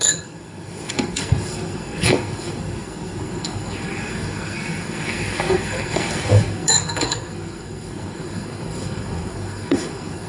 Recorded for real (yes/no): no